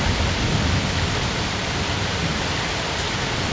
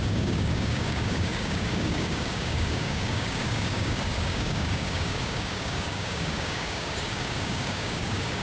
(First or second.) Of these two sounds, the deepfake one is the second